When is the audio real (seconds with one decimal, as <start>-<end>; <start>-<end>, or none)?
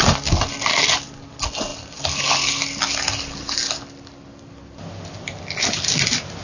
0.0-6.4